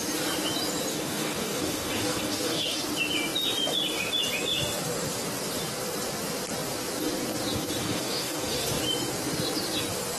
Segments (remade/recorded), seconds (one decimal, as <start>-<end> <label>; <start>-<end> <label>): 0.0-0.9 recorded; 0.9-2.8 remade; 2.8-7.8 recorded; 7.8-8.8 remade; 8.8-10.2 recorded